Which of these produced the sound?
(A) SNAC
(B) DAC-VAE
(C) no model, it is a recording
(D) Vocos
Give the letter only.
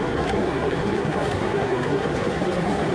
A